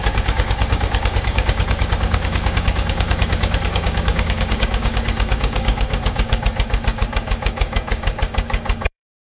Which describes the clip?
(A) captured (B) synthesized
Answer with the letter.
B